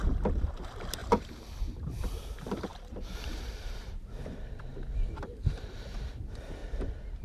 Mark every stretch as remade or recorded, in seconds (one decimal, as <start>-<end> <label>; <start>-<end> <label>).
0.0-6.6 remade; 6.6-7.2 recorded